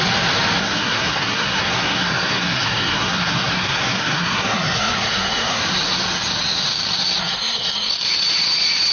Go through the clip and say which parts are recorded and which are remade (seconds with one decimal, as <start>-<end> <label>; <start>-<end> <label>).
0.0-0.6 recorded; 0.6-5.6 remade; 5.6-7.2 recorded; 7.2-7.9 remade; 7.9-8.9 recorded